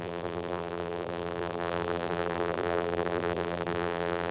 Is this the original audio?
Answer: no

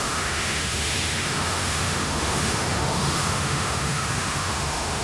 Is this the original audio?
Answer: no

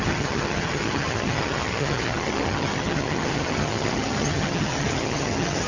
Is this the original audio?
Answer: no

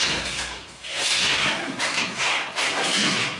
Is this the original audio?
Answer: no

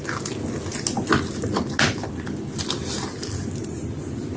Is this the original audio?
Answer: yes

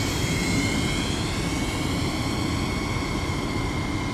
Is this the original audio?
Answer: yes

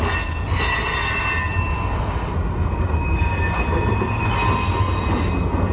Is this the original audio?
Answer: yes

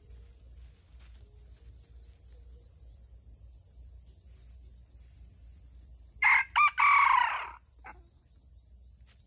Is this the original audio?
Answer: yes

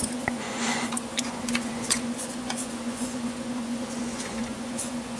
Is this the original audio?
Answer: no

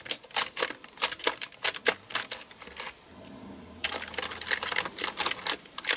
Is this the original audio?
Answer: yes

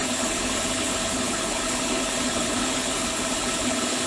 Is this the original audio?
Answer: no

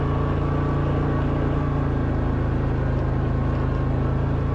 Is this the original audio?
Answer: yes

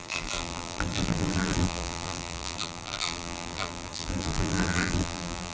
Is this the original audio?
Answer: no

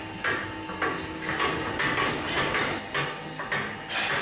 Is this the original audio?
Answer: yes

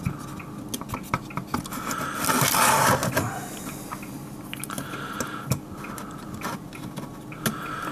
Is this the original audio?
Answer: yes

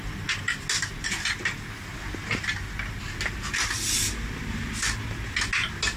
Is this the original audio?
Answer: yes